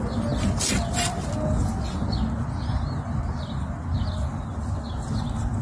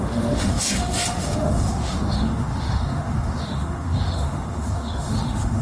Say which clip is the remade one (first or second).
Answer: second